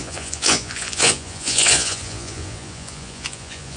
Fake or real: fake